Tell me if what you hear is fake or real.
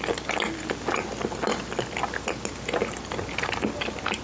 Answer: real